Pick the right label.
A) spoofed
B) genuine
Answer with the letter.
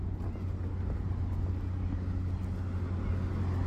B